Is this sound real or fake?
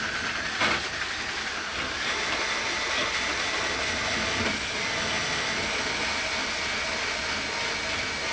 real